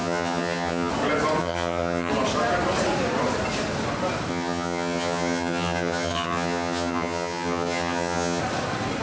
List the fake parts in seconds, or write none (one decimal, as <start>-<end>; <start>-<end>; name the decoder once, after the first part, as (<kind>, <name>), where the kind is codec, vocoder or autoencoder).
0.0-0.9 (vocoder, HiFi-GAN); 1.4-2.1; 4.3-8.4